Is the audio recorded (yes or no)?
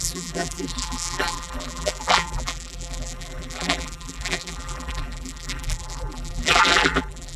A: no